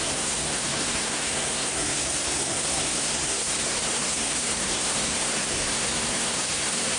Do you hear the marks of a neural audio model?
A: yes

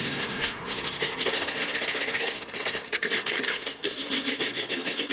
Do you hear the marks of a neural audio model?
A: yes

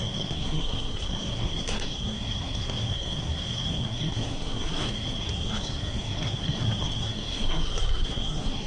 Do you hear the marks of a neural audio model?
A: yes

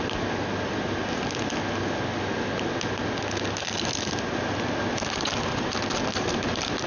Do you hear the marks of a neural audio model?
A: no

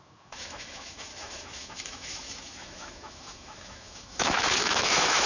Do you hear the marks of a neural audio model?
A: yes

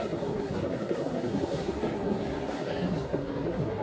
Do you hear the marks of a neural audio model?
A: yes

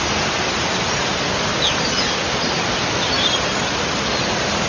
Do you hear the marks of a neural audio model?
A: no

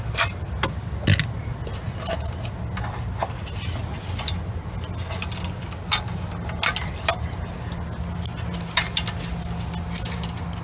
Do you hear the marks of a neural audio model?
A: no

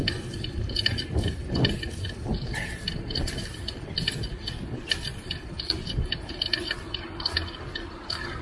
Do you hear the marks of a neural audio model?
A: no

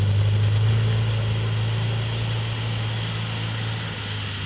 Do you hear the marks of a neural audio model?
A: no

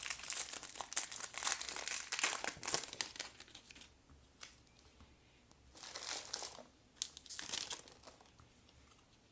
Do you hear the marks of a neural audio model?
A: no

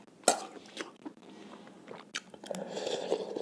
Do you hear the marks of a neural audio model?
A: no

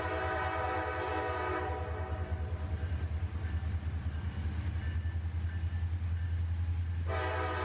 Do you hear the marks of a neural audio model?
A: no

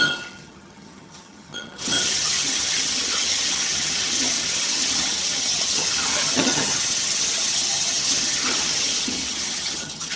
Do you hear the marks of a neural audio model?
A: yes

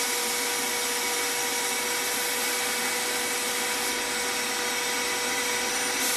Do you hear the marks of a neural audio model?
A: no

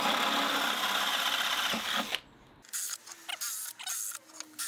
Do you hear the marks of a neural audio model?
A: no